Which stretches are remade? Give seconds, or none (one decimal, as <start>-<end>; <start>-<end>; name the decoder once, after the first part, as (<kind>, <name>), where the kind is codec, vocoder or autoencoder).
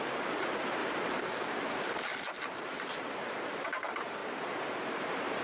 0.0-5.4 (vocoder, BigVGAN v2)